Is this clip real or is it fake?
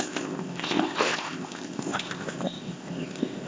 fake